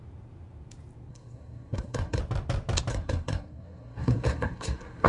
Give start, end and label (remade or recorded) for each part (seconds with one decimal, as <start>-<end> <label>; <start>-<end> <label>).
0.0-1.1 recorded; 1.1-2.2 remade; 2.2-2.9 recorded; 2.9-5.1 remade